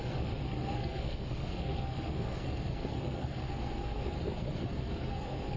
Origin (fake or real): fake